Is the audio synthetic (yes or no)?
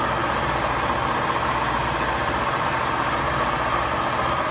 no